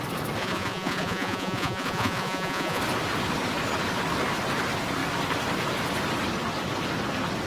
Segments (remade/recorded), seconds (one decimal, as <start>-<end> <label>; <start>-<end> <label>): 0.0-0.4 recorded; 0.4-2.8 remade; 2.8-7.5 recorded